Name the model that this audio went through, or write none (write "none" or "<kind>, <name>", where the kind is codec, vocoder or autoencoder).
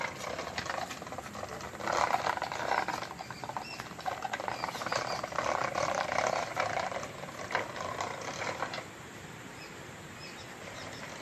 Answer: none